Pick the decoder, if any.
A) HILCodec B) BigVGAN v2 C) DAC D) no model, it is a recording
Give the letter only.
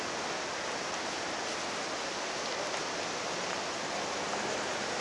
D